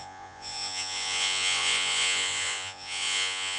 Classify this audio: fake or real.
fake